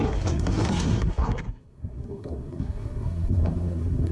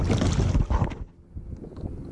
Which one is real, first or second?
second